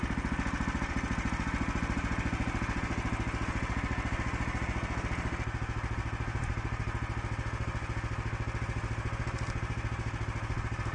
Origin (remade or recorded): recorded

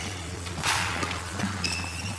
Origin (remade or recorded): remade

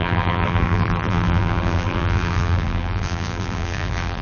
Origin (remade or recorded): remade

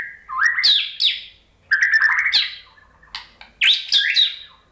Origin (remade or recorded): recorded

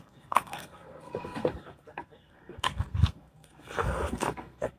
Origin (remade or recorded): remade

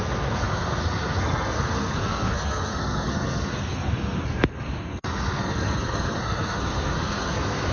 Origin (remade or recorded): remade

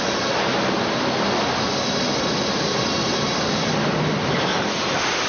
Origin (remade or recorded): recorded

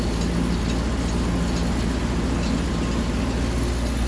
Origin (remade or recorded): recorded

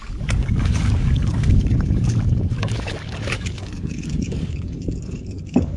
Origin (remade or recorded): remade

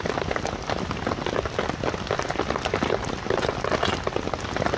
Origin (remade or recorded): recorded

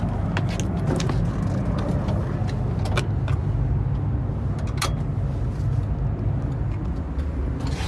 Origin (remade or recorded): recorded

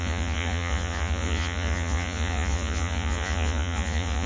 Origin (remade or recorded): remade